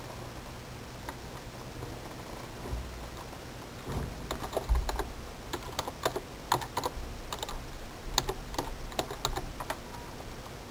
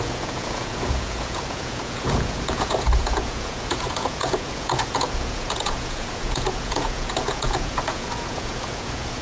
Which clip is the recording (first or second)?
first